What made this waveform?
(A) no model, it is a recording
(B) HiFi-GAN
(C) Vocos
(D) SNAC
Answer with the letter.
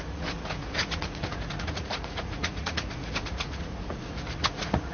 C